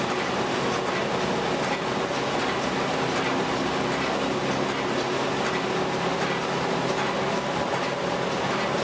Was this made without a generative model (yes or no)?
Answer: yes